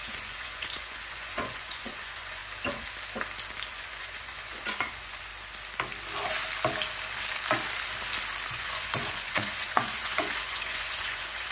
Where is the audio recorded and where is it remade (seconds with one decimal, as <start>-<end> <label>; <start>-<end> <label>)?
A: 0.0-2.4 remade; 2.4-3.7 recorded; 3.7-5.3 remade; 5.3-8.5 recorded; 8.5-11.5 remade